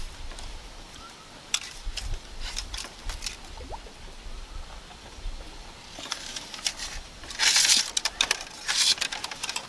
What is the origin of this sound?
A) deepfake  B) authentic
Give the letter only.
A